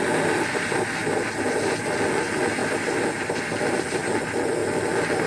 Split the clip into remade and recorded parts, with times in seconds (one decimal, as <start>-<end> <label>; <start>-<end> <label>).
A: 0.0-5.3 recorded